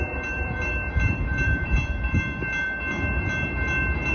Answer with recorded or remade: remade